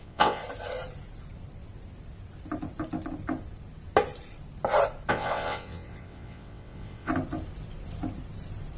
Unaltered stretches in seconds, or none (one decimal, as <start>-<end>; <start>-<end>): 0.4-5.1; 7.1-8.8